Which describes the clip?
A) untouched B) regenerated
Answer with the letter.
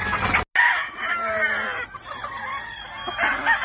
A